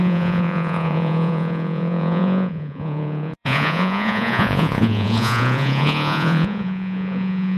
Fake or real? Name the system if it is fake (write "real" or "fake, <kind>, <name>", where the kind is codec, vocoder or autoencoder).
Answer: fake, vocoder, Vocos